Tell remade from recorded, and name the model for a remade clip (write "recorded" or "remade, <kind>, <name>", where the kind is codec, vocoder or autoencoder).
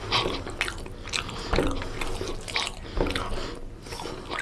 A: recorded